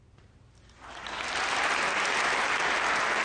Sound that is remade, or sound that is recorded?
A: recorded